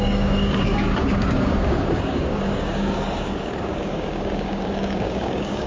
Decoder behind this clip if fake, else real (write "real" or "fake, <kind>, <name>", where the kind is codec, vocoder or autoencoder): fake, codec, DAC